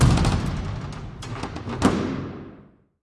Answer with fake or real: real